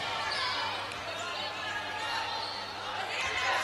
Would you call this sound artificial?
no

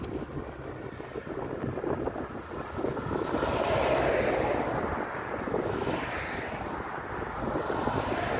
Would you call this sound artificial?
no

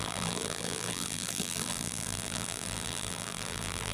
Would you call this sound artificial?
yes